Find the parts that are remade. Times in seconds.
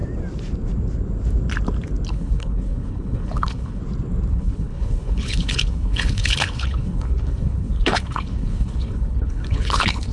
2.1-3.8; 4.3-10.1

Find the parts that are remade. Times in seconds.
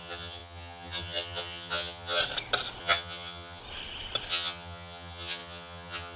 0.0-2.2; 2.8-3.6; 4.3-6.2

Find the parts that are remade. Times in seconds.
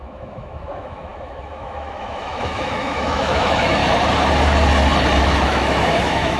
0.0-3.8; 5.2-6.4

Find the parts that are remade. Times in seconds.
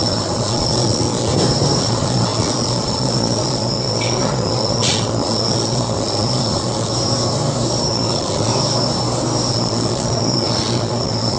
0.0-1.3; 1.8-6.9; 7.9-8.5; 9.5-11.4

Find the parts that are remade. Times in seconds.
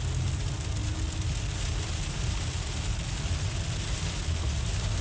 none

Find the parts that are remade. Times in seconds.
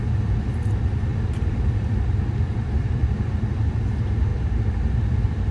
1.1-3.2; 4.3-5.1